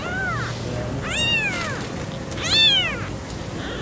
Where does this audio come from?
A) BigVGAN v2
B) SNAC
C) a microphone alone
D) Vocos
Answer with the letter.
C